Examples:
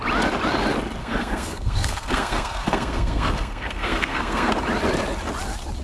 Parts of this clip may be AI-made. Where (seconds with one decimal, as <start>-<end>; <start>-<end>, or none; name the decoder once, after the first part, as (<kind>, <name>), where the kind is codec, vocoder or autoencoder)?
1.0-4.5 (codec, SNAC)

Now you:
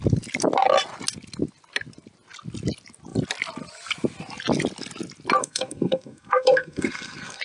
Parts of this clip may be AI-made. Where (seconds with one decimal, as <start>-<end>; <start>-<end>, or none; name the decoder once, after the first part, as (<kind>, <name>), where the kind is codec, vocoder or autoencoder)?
5.4-7.4 (codec, SNAC)

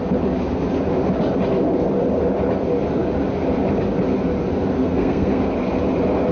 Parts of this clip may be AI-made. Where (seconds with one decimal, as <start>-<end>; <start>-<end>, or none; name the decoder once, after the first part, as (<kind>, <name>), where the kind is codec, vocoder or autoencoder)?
4.8-5.4 (codec, SNAC)